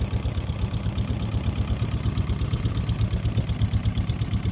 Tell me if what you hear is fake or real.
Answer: real